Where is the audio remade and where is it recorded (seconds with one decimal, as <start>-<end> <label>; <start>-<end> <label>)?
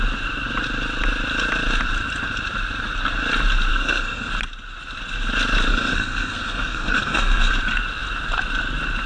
0.0-3.7 recorded; 3.7-4.3 remade; 4.3-5.7 recorded; 5.7-7.5 remade; 7.5-9.1 recorded